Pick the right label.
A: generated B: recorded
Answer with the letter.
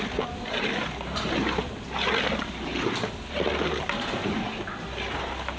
B